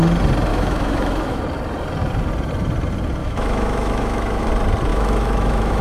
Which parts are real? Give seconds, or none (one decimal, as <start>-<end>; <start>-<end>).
0.0-0.5; 1.4-3.2; 4.5-4.9